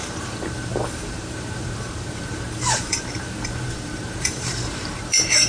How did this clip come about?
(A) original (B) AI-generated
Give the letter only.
B